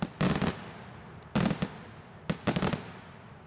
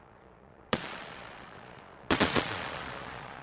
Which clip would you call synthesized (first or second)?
second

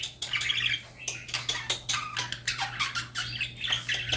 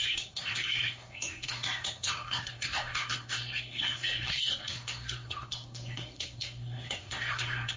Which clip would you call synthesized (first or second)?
second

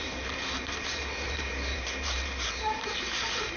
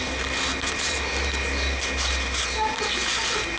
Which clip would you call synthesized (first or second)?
first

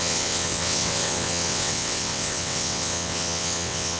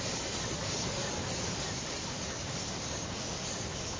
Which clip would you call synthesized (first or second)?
first